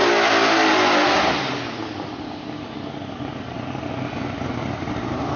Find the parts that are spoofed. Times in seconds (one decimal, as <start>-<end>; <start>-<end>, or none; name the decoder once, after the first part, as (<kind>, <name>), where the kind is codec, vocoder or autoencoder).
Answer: 3.2-5.4 (vocoder, BigVGAN v2)

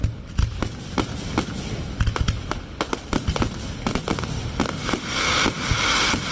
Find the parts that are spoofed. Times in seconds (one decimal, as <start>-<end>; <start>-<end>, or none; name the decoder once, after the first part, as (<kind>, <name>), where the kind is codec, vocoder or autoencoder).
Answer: none

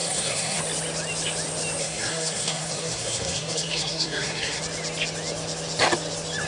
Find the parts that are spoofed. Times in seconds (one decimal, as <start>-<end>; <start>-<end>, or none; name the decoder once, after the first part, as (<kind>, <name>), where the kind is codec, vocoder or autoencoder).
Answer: 0.0-0.6 (codec, SNAC); 1.8-4.6

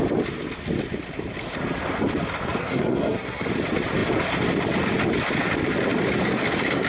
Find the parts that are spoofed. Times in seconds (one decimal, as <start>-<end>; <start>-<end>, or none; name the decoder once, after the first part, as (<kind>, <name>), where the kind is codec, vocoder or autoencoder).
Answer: 2.6-3.5 (codec, SNAC)